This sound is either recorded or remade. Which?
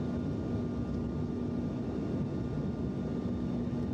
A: recorded